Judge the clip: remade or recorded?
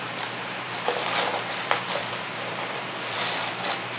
remade